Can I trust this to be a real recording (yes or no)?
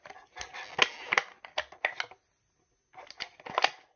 yes